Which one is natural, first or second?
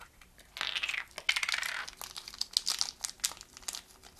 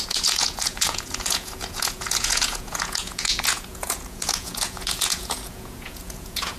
first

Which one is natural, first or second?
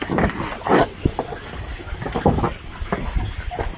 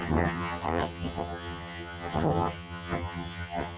first